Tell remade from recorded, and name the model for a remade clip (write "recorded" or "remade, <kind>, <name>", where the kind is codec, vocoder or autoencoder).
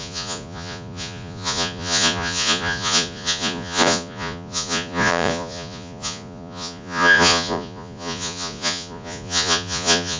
remade, vocoder, Vocos